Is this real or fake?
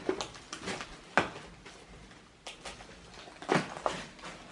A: real